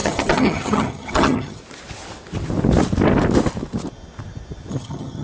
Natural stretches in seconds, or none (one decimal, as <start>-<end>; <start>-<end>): 1.6-4.7